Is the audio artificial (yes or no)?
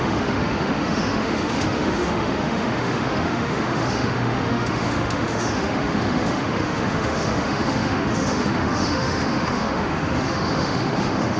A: yes